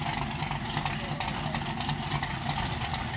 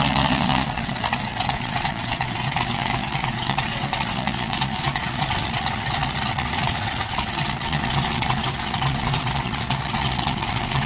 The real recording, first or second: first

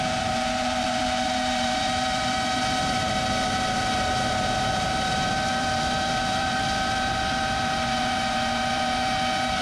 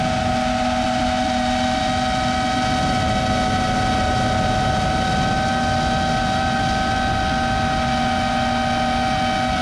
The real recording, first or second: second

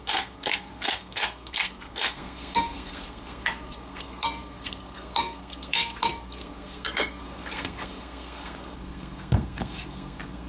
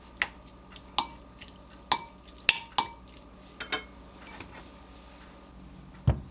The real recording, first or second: second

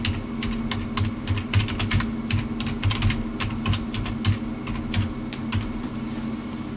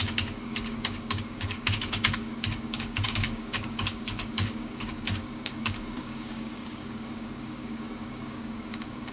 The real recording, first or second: first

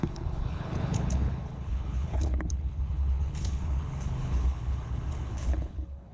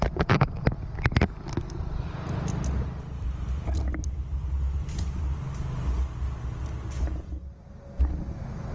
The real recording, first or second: second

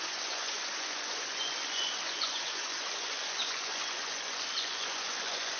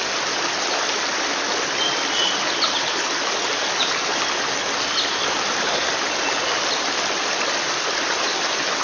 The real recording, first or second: second